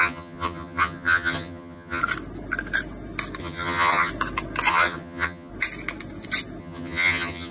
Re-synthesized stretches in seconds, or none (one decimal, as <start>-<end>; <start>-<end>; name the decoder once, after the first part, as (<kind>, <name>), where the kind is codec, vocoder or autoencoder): 0.0-2.0 (vocoder, HiFi-GAN); 3.4-4.1; 4.7-5.5; 6.6-7.5

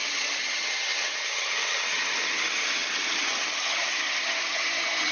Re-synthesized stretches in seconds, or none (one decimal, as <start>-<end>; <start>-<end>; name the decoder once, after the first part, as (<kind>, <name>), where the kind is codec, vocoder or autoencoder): 0.0-5.1 (vocoder, HiFi-GAN)

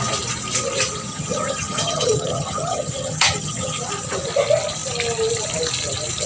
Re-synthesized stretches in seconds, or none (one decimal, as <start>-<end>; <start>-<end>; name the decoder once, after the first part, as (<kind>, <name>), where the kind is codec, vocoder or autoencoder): 1.1-3.8 (vocoder, HiFi-GAN)

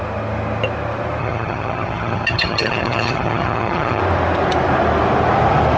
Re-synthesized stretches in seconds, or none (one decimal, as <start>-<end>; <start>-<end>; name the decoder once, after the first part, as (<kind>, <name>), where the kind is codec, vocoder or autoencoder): 1.2-4.0 (vocoder, HiFi-GAN)

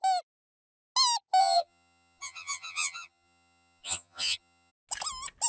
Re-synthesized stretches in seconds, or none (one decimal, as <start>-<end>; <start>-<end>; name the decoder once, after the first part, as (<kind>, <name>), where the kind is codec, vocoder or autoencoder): 1.4-4.7 (vocoder, HiFi-GAN)